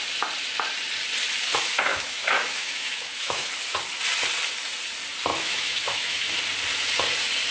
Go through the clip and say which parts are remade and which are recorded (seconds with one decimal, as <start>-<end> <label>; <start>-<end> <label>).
0.0-1.9 recorded; 1.9-3.5 remade; 3.5-5.3 recorded; 5.3-6.3 remade; 6.3-7.5 recorded